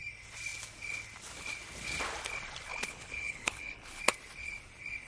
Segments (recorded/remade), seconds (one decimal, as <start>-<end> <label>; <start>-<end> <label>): 0.0-2.7 recorded; 2.7-4.0 remade; 4.0-5.1 recorded